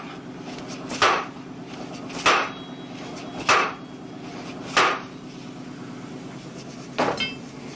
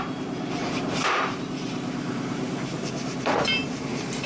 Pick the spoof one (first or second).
second